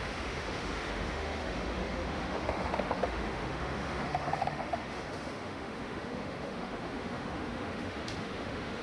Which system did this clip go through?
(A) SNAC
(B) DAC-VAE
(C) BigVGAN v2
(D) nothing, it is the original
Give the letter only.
B